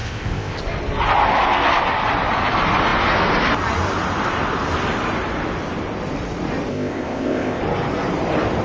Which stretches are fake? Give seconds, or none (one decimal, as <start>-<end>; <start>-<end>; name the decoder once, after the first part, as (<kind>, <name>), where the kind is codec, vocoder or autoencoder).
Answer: 0.0-0.6 (codec, ZipCodec); 6.7-7.6